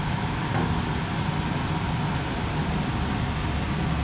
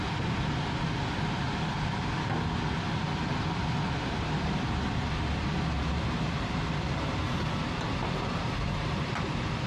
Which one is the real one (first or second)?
first